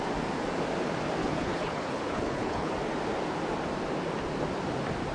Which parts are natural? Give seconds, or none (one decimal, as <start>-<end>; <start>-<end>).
0.0-1.2; 2.7-5.1